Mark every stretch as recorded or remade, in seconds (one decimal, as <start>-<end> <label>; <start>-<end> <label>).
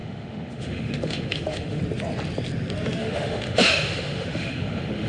0.0-1.8 remade; 1.8-3.0 recorded; 3.0-5.1 remade